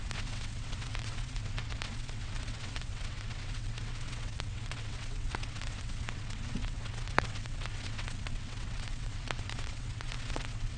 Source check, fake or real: fake